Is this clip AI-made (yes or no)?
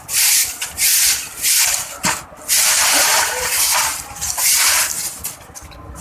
no